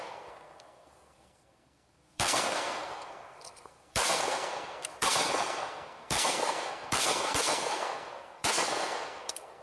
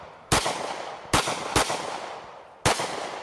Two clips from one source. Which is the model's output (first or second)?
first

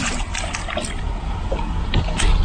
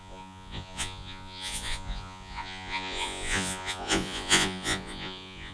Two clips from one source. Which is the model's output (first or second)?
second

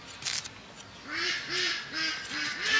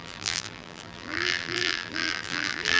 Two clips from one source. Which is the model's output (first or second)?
second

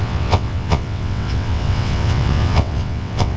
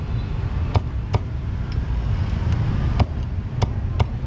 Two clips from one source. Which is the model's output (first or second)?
first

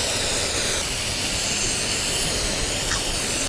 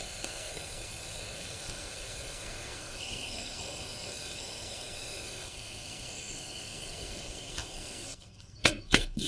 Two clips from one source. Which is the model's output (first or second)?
second